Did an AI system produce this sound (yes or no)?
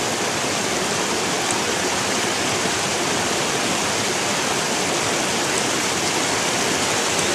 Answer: no